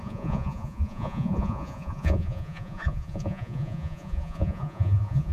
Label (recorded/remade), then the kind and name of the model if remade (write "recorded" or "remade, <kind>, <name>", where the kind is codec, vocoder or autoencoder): remade, vocoder, Vocos